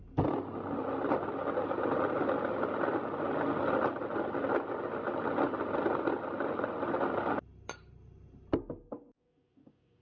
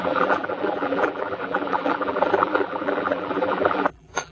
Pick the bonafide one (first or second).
first